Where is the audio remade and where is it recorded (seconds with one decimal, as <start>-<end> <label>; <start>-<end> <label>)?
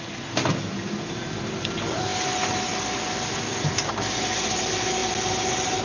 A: 0.0-5.8 recorded